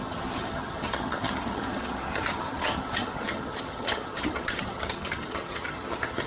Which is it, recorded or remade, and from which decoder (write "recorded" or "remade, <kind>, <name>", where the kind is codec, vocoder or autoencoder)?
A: remade, vocoder, HiFi-GAN